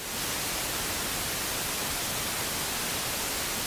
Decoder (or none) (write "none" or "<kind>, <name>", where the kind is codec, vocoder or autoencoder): none